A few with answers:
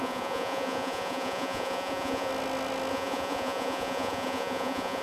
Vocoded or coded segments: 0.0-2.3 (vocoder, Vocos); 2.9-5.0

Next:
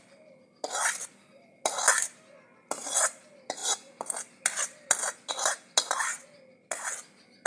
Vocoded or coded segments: none

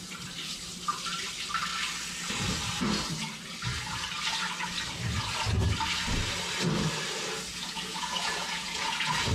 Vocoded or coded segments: 7.5-9.3 (vocoder, Vocos)

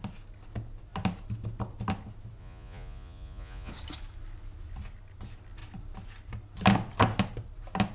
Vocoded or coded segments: 2.4-3.7 (vocoder, Vocos)

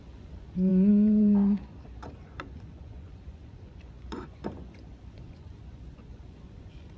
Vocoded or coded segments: 0.0-7.0 (vocoder, Vocos)